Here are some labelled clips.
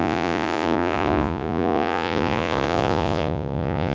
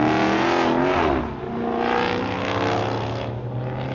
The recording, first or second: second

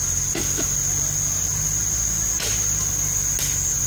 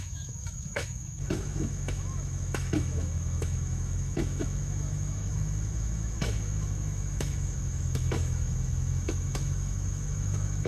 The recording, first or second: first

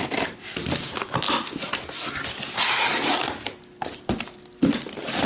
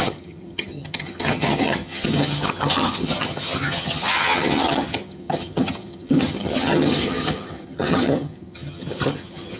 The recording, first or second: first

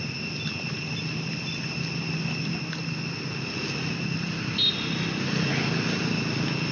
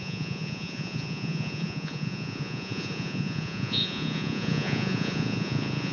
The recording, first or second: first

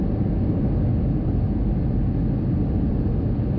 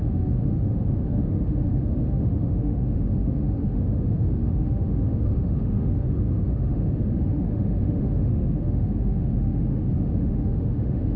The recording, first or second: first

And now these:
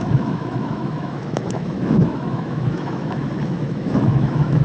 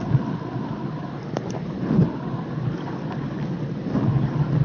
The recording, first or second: second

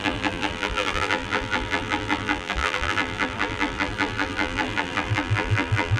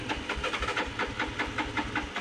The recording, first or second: second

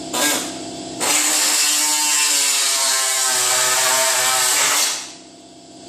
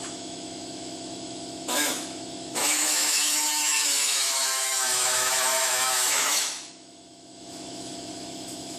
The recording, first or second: first